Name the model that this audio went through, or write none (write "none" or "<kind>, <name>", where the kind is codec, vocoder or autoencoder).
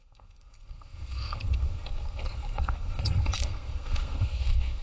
codec, SNAC